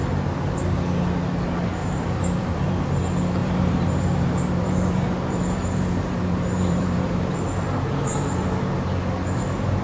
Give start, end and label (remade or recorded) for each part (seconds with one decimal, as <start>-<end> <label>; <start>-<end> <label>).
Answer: 0.0-1.8 recorded; 1.8-2.7 remade; 2.7-3.4 recorded; 3.4-8.6 remade; 8.6-9.8 recorded